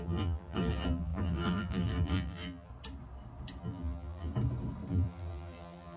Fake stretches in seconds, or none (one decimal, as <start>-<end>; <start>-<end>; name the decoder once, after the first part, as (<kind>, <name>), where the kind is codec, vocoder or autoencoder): 0.0-2.7 (vocoder, BigVGAN v2); 3.6-4.3; 4.9-6.0